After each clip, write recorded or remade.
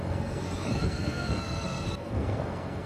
remade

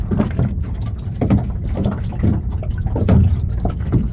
remade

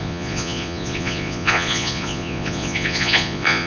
remade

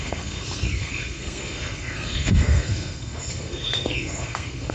remade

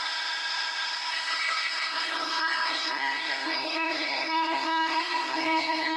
remade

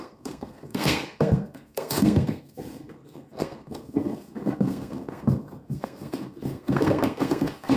remade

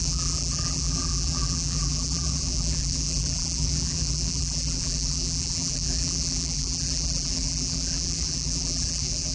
remade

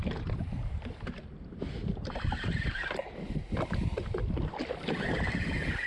recorded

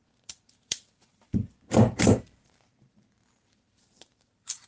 remade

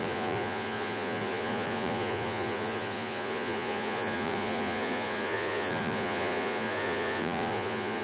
remade